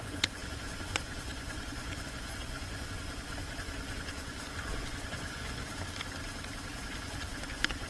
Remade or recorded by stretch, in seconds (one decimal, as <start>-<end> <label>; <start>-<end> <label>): 0.0-5.7 remade; 5.7-6.7 recorded; 6.7-7.9 remade